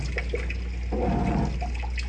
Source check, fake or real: real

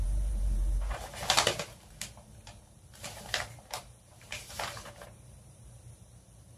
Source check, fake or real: fake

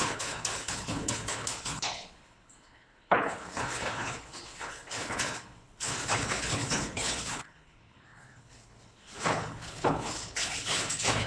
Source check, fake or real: fake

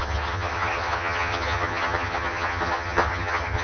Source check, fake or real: fake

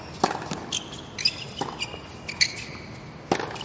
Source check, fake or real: real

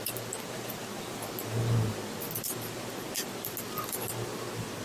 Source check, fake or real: real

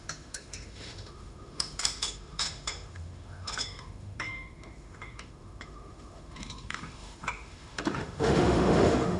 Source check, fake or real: fake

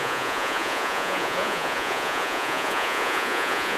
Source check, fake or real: fake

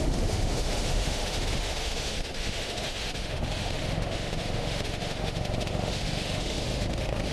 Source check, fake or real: fake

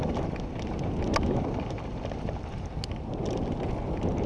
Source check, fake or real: real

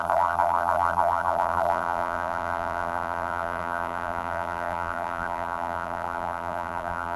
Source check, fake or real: fake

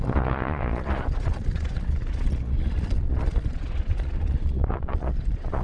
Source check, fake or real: fake